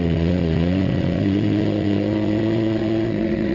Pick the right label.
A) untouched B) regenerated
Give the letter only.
B